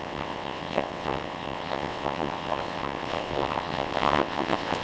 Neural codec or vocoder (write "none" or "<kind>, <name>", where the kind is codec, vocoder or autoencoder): vocoder, WaveNeXt